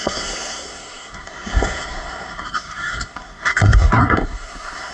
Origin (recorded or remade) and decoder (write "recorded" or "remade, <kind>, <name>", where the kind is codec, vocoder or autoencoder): remade, codec, SNAC